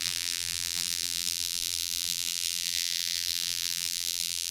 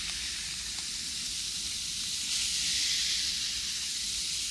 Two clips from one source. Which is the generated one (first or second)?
first